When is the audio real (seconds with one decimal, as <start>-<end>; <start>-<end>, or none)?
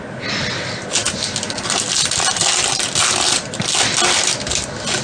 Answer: 0.0-5.0